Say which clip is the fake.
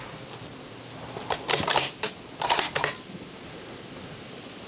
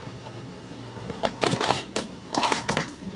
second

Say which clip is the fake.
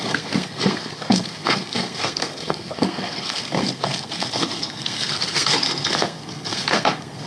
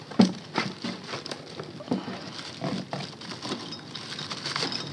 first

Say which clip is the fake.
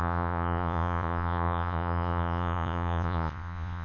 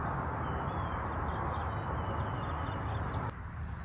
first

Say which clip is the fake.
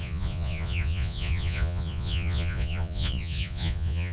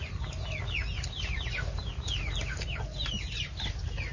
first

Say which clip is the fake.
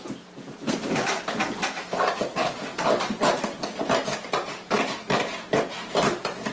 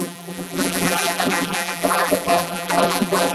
second